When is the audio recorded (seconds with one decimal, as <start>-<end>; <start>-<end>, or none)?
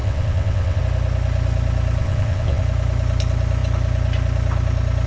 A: 0.8-2.0; 2.6-5.1